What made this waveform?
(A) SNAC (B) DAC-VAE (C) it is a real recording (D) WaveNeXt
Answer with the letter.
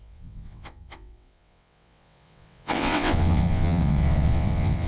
D